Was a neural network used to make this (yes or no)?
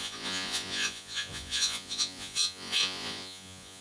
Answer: yes